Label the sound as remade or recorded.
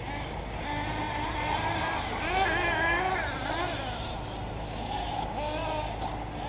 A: recorded